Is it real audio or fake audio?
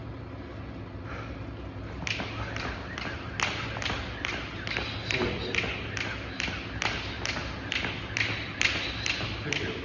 real